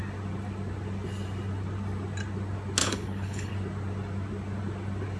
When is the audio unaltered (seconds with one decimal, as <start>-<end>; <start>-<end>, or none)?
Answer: 0.0-2.8; 3.5-5.2